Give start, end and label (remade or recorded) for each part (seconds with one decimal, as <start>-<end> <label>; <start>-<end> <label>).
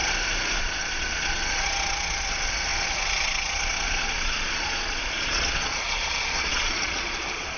0.0-0.6 recorded; 0.6-7.6 remade